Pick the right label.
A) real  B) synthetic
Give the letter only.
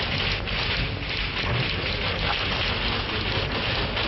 A